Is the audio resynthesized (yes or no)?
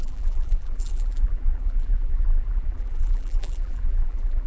yes